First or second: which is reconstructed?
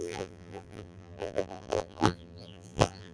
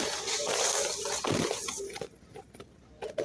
first